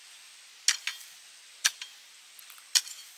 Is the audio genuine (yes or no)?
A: yes